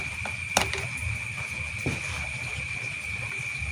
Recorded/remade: remade